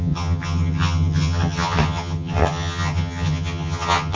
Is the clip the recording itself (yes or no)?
no